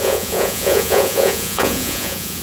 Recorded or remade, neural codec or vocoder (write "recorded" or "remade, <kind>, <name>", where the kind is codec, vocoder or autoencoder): remade, vocoder, Vocos